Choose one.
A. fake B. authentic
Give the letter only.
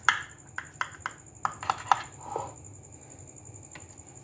B